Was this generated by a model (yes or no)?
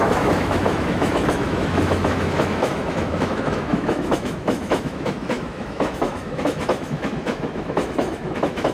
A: yes